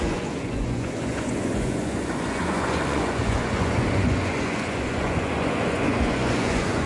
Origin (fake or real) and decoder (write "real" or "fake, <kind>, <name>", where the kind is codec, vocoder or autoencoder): fake, vocoder, Vocos